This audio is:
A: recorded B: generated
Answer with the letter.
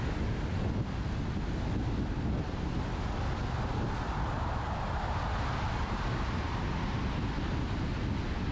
A